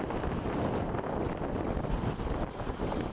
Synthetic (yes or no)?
no